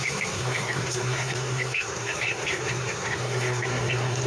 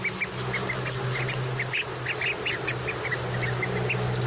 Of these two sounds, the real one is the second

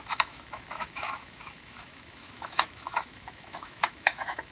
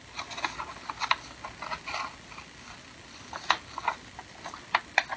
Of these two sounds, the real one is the second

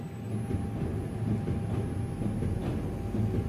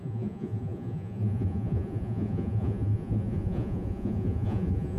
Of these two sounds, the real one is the first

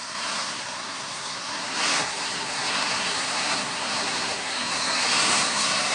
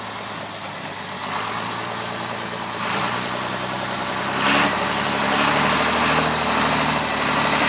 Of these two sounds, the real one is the second